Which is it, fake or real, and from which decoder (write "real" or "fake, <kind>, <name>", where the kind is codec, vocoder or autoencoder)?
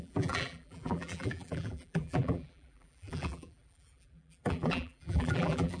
fake, vocoder, BigVGAN v2